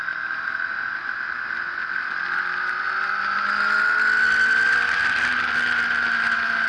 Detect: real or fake real